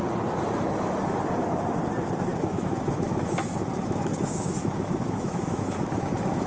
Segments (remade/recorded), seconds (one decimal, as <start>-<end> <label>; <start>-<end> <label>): 0.0-2.3 recorded; 2.3-6.5 remade